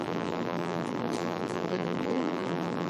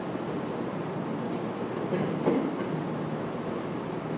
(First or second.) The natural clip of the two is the second